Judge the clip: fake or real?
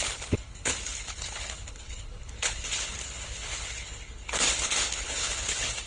fake